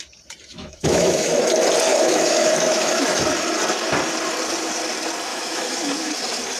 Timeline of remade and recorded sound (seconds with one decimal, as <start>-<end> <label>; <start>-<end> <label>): 0.0-0.5 recorded; 0.5-1.3 remade; 1.3-1.9 recorded; 1.9-3.2 remade; 3.2-5.3 recorded; 5.3-6.1 remade; 6.1-6.6 recorded